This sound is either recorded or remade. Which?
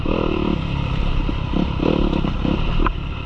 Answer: remade